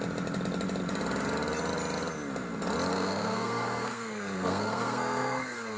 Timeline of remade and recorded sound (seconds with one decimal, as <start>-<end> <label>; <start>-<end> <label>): 0.0-2.9 recorded; 2.9-5.8 remade